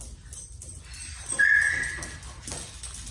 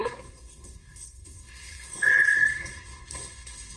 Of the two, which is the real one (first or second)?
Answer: first